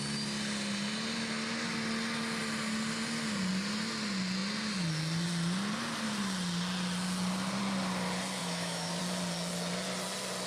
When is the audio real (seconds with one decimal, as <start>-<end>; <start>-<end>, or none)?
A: 0.0-8.4; 9.0-10.5